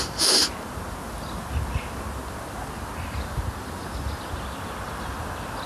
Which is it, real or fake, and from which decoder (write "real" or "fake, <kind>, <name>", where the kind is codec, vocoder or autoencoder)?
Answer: real